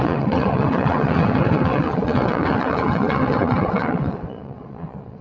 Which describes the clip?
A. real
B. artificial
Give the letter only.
B